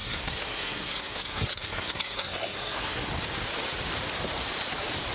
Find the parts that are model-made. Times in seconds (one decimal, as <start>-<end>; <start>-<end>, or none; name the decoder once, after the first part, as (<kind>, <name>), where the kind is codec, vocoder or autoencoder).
0.0-3.1 (codec, SNAC)